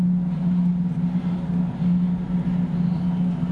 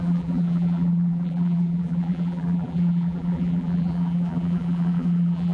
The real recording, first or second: first